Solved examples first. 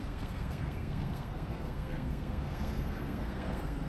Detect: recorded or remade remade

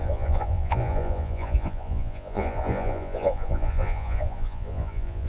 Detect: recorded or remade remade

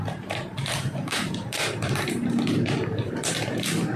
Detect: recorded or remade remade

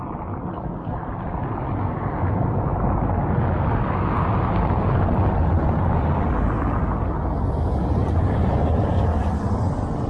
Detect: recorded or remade recorded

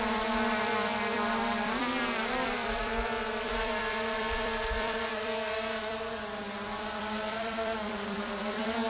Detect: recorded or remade remade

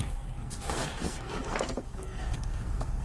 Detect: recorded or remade remade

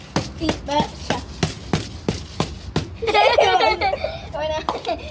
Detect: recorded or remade recorded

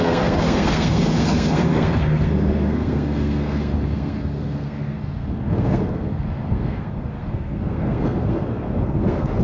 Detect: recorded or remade remade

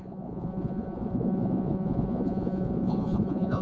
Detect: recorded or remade remade